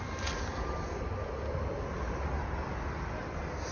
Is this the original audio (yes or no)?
yes